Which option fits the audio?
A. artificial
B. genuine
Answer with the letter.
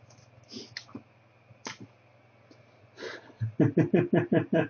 B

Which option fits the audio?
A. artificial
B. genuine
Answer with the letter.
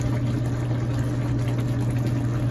B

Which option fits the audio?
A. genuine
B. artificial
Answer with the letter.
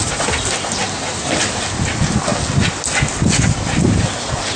A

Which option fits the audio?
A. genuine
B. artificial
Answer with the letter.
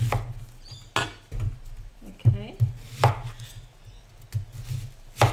A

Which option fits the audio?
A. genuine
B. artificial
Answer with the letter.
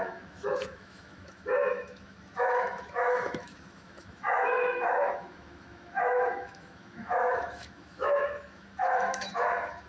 B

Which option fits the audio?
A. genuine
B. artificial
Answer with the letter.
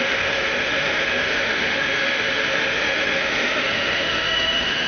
B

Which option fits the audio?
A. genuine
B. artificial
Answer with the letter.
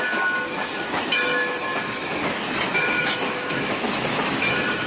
B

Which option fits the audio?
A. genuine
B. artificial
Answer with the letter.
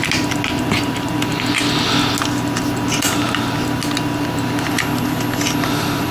A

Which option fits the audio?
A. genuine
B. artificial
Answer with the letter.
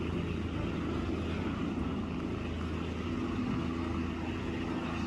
A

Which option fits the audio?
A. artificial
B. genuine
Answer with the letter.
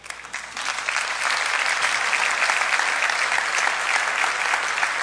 B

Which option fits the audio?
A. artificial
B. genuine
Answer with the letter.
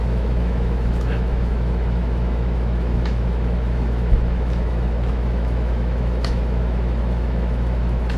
A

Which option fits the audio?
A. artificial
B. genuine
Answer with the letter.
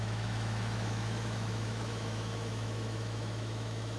A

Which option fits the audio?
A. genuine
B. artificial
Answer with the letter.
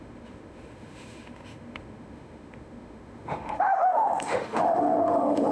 B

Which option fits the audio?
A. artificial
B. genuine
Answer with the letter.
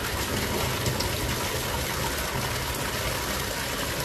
B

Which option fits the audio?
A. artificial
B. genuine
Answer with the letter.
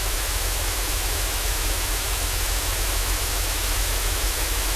A